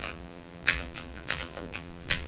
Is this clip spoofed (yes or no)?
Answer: yes